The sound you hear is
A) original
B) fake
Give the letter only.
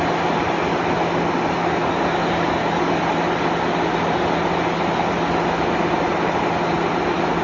A